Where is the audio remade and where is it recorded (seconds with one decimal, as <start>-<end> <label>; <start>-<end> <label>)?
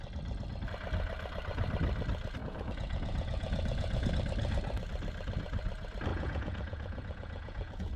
0.0-2.4 recorded; 2.4-4.1 remade; 4.1-6.1 recorded; 6.1-8.0 remade